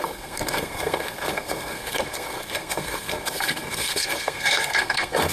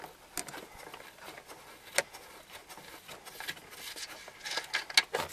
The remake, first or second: first